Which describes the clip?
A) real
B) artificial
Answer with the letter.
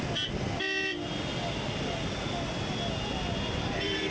A